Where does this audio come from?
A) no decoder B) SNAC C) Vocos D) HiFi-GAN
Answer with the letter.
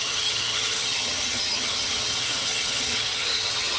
D